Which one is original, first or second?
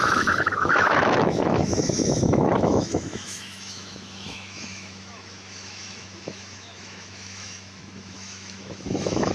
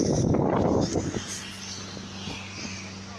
second